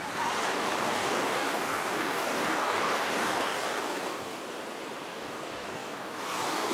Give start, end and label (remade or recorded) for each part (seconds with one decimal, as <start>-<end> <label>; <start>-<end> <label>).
0.0-0.5 recorded; 0.5-4.4 remade; 4.4-5.1 recorded; 5.1-6.7 remade